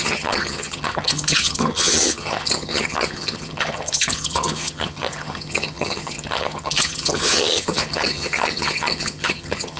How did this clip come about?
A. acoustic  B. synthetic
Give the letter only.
B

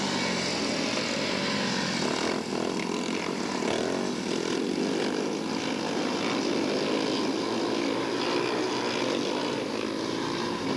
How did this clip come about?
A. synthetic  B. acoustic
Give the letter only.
B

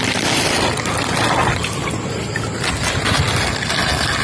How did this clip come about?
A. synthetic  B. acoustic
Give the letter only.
B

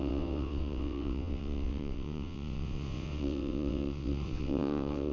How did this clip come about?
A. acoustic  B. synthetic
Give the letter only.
B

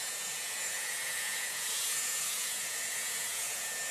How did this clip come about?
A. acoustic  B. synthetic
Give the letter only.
B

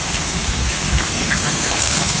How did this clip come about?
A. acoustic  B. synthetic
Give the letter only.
B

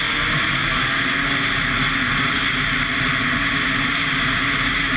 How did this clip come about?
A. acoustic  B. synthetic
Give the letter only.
A